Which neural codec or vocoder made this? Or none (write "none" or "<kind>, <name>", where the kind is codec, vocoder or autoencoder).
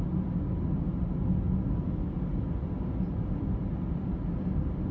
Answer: none